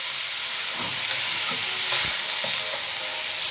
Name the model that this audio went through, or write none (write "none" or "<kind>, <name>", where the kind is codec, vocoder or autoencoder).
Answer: none